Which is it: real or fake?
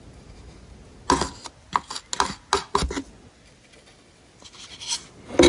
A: real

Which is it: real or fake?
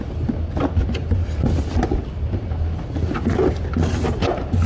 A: real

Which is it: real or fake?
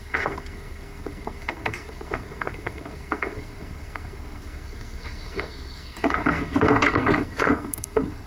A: fake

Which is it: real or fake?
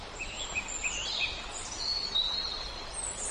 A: real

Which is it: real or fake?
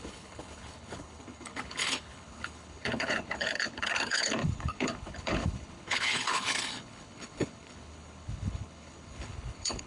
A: fake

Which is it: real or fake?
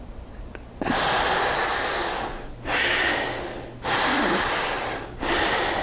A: real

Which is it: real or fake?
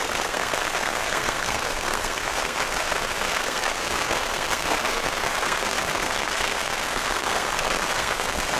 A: fake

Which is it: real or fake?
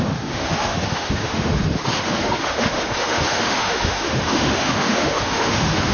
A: fake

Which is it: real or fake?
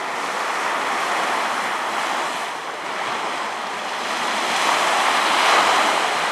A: fake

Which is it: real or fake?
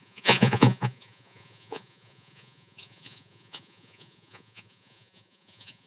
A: fake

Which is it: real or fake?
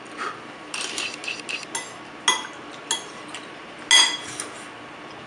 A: real